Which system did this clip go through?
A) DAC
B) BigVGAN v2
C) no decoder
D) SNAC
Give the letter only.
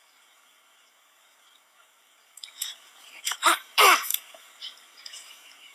A